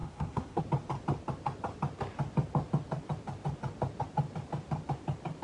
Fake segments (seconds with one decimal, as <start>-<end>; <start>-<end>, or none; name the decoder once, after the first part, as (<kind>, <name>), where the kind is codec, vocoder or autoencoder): 0.0-0.6 (codec, SNAC)